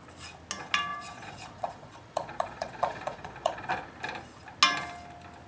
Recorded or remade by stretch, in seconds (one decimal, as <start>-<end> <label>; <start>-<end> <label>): 0.0-0.9 recorded; 0.9-3.7 remade; 3.7-5.5 recorded

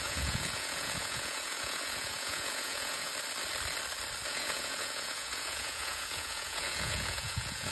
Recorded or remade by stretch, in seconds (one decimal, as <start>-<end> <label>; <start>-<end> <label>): 0.0-3.1 remade; 3.1-4.3 recorded; 4.3-7.7 remade

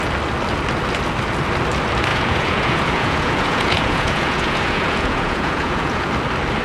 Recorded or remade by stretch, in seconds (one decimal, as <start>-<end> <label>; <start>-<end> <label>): 0.0-2.1 recorded; 2.1-6.1 remade; 6.1-6.6 recorded

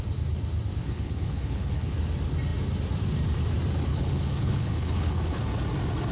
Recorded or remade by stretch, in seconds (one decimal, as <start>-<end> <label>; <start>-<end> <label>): 0.0-0.8 recorded; 0.8-1.9 remade; 1.9-3.9 recorded; 3.9-5.4 remade; 5.4-6.1 recorded

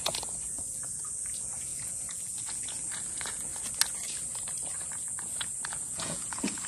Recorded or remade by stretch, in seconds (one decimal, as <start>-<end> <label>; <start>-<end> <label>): 0.0-3.5 remade; 3.5-4.9 recorded; 4.9-6.7 remade

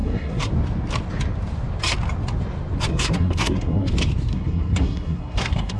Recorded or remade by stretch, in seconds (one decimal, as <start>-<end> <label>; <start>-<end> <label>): 0.0-0.5 remade; 0.5-2.9 recorded; 2.9-3.9 remade; 3.9-4.3 recorded; 4.3-5.8 remade